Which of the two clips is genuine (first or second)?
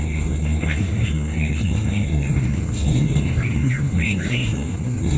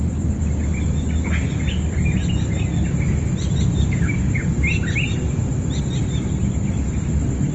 second